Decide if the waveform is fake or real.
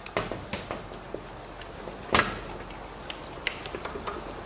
real